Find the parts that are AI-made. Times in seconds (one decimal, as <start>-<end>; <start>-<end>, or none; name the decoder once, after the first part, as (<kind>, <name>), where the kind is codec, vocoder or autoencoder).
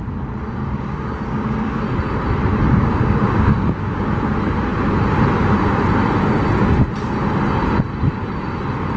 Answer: 0.6-1.8 (codec, DAC); 2.5-4.1